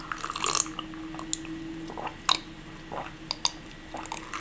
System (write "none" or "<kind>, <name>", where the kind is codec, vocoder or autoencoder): none